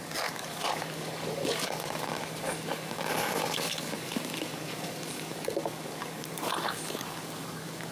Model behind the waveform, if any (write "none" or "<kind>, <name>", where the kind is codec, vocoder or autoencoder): codec, DAC